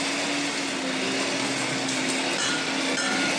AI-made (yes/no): no